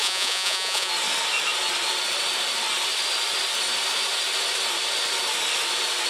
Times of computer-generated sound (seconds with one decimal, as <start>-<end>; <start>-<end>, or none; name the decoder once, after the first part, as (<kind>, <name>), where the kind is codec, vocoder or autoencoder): 0.0-0.9 (vocoder, Vocos)